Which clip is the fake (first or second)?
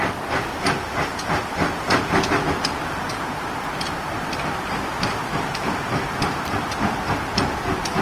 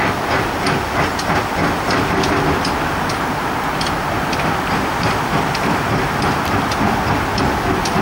first